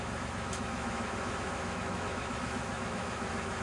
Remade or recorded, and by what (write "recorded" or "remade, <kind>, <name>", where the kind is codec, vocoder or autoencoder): remade, autoencoder, DAC-VAE